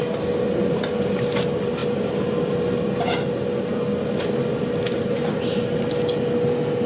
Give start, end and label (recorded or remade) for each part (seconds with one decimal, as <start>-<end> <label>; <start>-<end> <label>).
0.0-6.9 recorded